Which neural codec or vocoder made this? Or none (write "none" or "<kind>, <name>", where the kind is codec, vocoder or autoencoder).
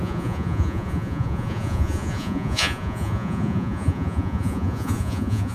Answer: vocoder, Vocos